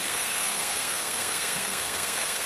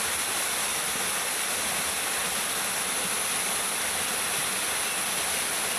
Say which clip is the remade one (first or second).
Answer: first